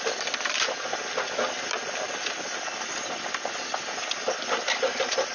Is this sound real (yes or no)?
yes